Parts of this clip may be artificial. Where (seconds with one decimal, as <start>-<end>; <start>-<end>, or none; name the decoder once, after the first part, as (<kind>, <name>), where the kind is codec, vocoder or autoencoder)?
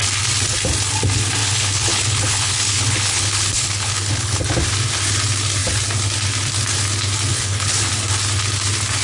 1.4-4.4 (codec, HILCodec); 7.3-7.9